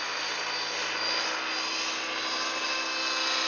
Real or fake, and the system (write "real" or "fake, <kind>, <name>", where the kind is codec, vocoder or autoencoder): real